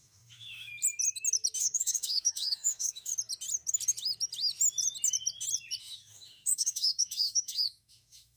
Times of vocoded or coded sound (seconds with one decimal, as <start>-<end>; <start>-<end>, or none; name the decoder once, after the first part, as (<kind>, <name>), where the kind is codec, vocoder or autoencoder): 0.0-0.7 (autoencoder, DAC-VAE); 1.6-3.1; 5.8-8.4